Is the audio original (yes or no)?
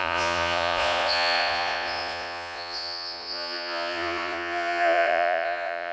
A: no